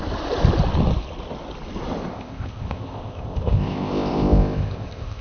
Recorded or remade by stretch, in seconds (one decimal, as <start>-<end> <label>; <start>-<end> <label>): 0.0-2.1 recorded; 2.1-5.2 remade